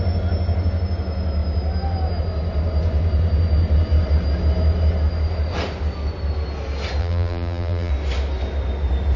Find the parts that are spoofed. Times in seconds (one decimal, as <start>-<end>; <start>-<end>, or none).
7.0-7.9